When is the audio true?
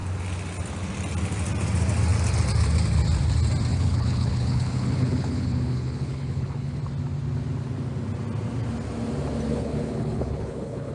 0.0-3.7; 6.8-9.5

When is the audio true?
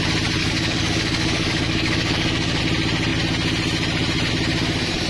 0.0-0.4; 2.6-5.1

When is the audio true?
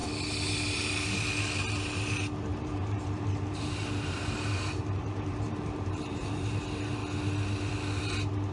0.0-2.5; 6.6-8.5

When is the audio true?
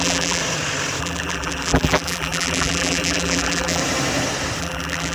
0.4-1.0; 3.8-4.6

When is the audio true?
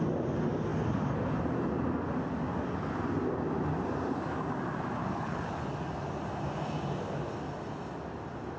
0.0-5.0; 5.6-8.6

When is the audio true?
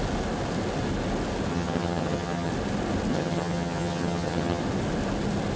0.0-1.5; 2.5-3.1; 4.6-5.6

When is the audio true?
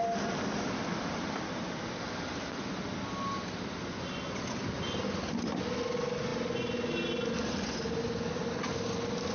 0.0-9.3